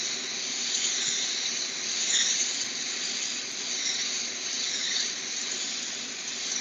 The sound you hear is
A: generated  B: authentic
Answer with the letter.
B